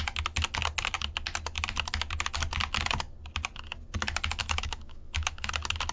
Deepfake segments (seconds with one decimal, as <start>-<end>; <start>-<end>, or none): 4.4-5.5